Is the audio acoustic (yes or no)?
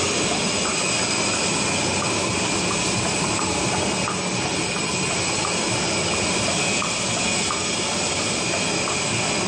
yes